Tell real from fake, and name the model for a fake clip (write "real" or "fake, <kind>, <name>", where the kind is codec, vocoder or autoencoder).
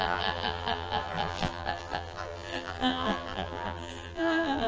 fake, vocoder, BigVGAN v2